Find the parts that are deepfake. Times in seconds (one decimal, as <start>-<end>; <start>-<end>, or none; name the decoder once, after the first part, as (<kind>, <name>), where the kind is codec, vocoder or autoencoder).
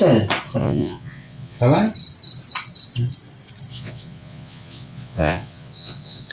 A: 0.6-1.6 (vocoder, Vocos); 3.7-6.3